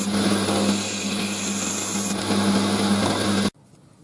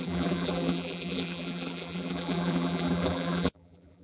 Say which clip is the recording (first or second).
first